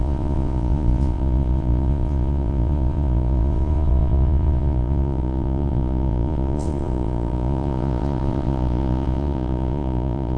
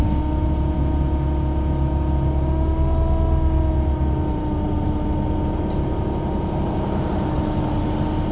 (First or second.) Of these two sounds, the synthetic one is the first